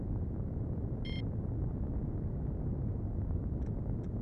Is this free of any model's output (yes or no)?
yes